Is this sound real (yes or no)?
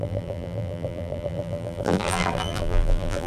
no